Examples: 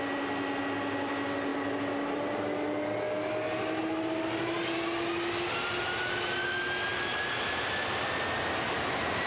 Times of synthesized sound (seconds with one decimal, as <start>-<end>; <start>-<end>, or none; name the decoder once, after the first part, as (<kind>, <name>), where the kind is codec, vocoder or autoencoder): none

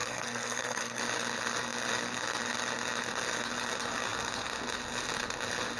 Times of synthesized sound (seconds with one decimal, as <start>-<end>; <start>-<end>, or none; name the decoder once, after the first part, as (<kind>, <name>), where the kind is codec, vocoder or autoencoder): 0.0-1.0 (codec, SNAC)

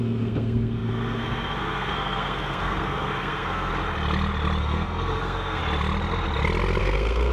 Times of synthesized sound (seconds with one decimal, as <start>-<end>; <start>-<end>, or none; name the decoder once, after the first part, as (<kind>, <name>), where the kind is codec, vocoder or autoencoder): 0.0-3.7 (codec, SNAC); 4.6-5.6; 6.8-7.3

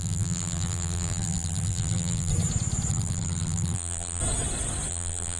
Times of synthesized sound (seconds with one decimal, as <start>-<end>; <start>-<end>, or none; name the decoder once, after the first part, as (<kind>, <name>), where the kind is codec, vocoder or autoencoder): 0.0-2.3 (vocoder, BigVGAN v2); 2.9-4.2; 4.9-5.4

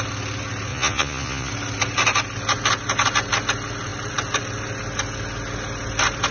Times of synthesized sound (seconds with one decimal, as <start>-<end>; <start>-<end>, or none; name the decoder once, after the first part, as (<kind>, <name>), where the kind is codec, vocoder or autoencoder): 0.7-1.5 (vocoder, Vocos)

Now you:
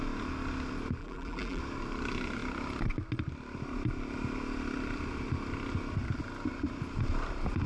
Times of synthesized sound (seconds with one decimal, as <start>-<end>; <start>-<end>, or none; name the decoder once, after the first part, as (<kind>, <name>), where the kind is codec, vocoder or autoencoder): 1.0-1.6 (vocoder, BigVGAN v2)

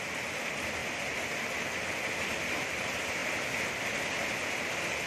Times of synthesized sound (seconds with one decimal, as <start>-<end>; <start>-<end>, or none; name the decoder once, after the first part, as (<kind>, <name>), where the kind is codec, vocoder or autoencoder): none